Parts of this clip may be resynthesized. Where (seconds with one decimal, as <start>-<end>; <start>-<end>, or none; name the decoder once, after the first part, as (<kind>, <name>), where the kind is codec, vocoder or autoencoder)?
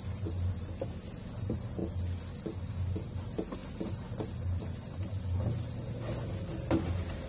none